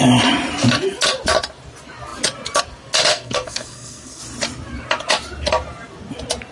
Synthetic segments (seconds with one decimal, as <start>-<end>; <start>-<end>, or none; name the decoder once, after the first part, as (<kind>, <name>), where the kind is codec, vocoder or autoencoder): 3.1-4.2 (codec, SNAC)